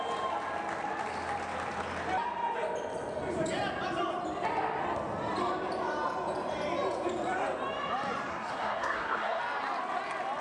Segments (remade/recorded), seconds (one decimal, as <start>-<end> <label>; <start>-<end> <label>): 0.0-8.3 recorded; 8.3-9.4 remade; 9.4-10.4 recorded

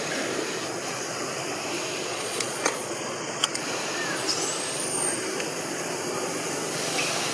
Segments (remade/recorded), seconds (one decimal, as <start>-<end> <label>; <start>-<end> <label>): 0.0-2.1 recorded; 2.1-3.6 remade; 3.6-7.3 recorded

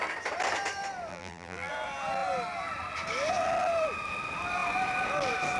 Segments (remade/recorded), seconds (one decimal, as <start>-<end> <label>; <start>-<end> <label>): 0.0-1.1 recorded; 1.1-1.7 remade; 1.7-5.6 recorded

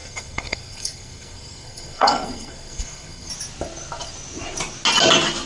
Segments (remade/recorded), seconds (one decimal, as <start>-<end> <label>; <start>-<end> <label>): 0.0-3.3 remade; 3.3-5.5 recorded